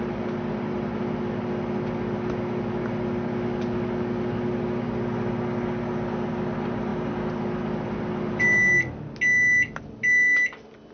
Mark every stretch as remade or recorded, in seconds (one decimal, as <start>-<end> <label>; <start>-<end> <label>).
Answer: 0.0-10.9 recorded